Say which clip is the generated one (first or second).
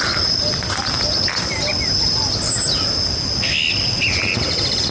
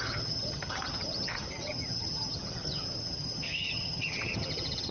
second